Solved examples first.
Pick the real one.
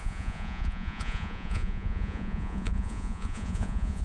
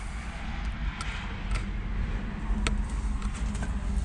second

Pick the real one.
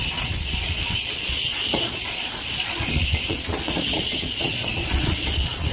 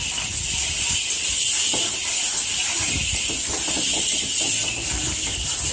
second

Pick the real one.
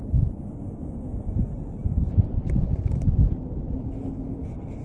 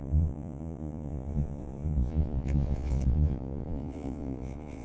first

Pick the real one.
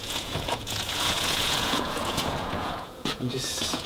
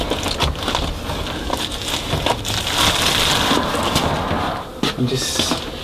second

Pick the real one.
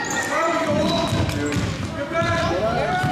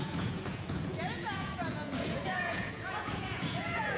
first